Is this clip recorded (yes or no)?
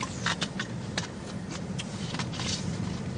yes